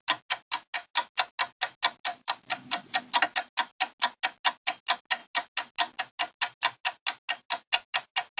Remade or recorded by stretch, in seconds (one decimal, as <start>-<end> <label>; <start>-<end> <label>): 0.0-2.1 recorded; 2.1-3.0 remade; 3.0-8.4 recorded